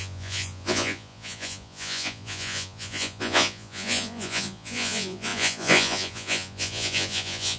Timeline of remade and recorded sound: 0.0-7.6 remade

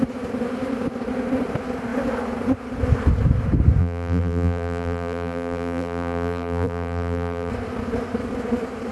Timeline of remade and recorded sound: 0.0-3.8 recorded; 3.8-7.5 remade; 7.5-8.9 recorded

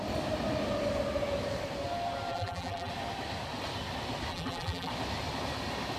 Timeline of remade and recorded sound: 0.0-2.3 recorded; 2.3-2.9 remade; 2.9-4.3 recorded; 4.3-4.9 remade; 4.9-6.0 recorded

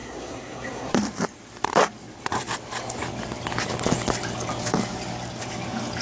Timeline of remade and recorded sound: 0.0-0.9 remade; 0.9-6.0 recorded

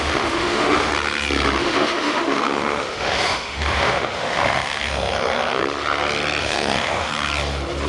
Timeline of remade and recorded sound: 0.0-0.9 remade; 0.9-1.6 recorded; 1.6-5.6 remade; 5.6-6.4 recorded; 6.4-7.1 remade; 7.1-7.9 recorded

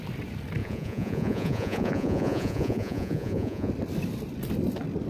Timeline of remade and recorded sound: 0.0-0.6 recorded; 0.6-3.7 remade; 3.7-5.1 recorded

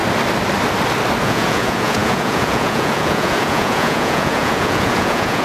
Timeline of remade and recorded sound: 0.0-1.2 recorded; 1.2-5.4 remade